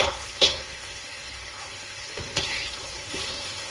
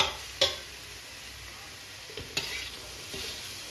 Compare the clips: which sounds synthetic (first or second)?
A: first